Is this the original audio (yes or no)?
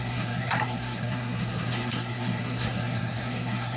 no